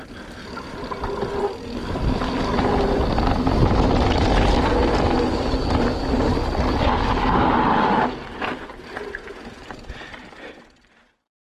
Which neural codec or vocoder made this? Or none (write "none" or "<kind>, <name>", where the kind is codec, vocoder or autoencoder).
none